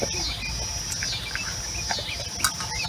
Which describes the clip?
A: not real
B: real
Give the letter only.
B